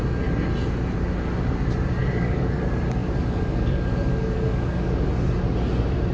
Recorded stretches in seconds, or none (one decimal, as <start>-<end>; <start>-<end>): 0.0-2.0; 2.6-3.0; 5.1-6.1